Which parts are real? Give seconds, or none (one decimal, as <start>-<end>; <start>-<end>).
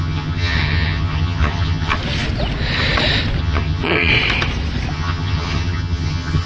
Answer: 2.0-3.4; 4.1-4.9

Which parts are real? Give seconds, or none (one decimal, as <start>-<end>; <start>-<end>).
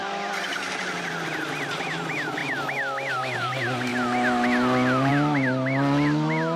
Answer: 0.0-6.6